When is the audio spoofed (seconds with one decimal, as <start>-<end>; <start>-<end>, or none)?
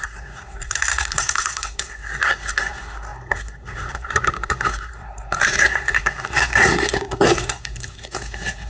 0.0-8.7